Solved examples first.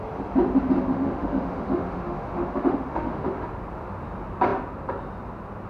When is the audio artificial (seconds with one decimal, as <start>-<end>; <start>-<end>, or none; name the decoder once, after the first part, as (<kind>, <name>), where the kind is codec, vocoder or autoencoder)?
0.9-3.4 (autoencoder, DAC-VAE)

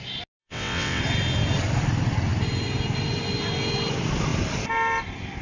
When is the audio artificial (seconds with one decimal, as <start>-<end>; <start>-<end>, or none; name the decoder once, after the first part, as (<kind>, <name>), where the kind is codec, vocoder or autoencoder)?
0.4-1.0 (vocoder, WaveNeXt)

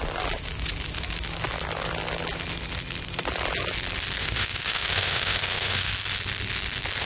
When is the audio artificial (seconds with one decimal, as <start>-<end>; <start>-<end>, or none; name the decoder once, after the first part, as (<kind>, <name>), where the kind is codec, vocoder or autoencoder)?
4.2-5.9 (autoencoder, DAC-VAE)

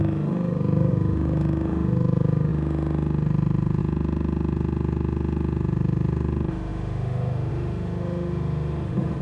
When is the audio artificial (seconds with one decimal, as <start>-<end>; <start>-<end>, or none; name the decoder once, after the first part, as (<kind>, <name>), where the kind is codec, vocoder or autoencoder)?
0.0-9.2 (autoencoder, DAC-VAE)

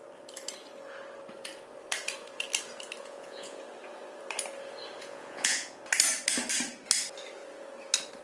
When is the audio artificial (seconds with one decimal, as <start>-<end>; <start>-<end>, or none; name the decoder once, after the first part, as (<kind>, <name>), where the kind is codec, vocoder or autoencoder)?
3.0-3.6 (vocoder, Vocos); 5.0-5.8